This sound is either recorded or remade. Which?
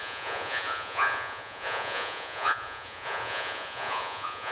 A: remade